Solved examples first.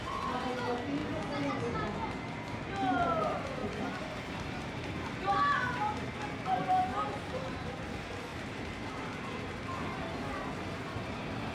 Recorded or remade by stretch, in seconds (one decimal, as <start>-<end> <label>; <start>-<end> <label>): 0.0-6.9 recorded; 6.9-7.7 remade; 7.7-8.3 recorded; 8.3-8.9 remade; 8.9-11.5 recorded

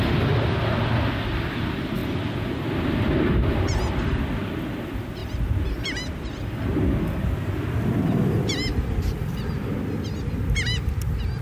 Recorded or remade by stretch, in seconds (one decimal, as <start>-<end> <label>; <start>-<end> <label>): 0.0-11.4 recorded

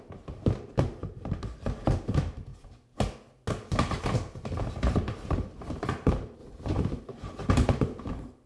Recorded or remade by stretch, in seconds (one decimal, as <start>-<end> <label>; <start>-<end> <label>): 0.0-1.0 remade; 1.0-2.1 recorded; 2.1-2.5 remade; 2.5-3.7 recorded; 3.7-8.5 remade

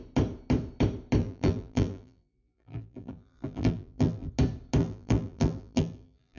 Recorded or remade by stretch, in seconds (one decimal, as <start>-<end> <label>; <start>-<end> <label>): 0.0-1.2 recorded; 1.2-4.3 remade; 4.3-4.8 recorded; 4.8-6.4 remade

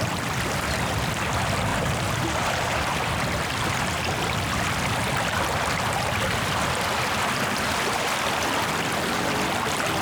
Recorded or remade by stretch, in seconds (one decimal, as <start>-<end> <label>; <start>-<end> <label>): 0.0-1.7 recorded; 1.7-3.1 remade; 3.1-10.0 recorded

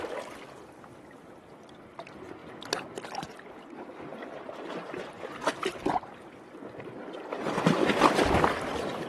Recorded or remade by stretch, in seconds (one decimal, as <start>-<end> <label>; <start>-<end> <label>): 0.0-4.1 recorded; 4.1-6.1 remade; 6.1-9.1 recorded